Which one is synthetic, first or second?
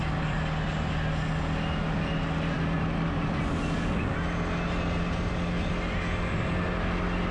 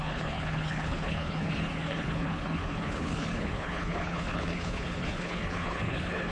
second